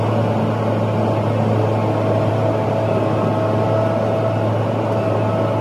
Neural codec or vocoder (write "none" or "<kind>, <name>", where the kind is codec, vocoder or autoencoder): none